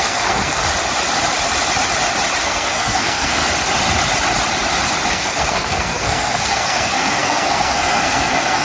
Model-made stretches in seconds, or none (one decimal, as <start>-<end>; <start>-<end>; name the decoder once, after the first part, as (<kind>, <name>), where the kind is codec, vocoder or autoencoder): 0.0-0.6 (codec, SNAC); 2.4-3.4; 5.1-8.6